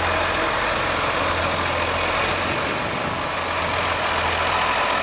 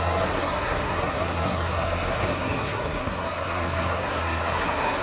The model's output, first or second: second